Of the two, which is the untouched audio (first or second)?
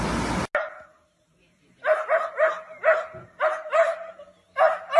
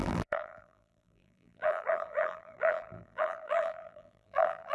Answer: first